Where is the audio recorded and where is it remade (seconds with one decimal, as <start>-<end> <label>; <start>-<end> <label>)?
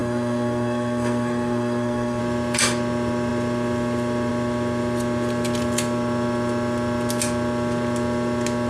0.0-2.2 remade; 2.2-8.7 recorded